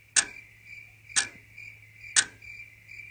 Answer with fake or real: real